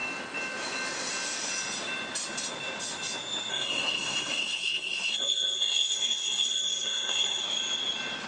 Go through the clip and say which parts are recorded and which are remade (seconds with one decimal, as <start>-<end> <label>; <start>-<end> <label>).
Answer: 0.0-3.5 recorded; 3.5-7.4 remade; 7.4-8.3 recorded